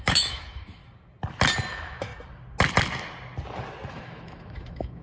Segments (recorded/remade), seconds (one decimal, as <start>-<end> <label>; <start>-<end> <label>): 0.0-0.8 remade; 0.8-1.7 recorded; 1.7-2.1 remade; 2.1-3.9 recorded; 3.9-5.0 remade

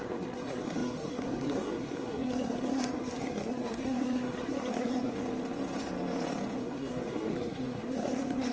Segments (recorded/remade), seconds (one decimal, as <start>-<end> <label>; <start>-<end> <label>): 0.0-5.1 remade; 5.1-6.6 recorded; 6.6-8.5 remade

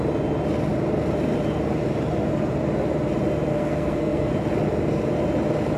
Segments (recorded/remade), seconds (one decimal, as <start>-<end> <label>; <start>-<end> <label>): 0.0-3.5 recorded; 3.5-4.3 remade; 4.3-5.8 recorded